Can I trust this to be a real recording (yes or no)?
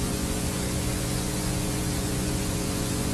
no